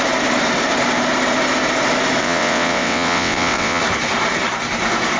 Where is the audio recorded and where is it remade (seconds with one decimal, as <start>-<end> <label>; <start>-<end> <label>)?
0.0-2.2 recorded; 2.2-3.8 remade; 3.8-5.2 recorded